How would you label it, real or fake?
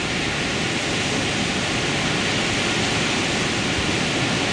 real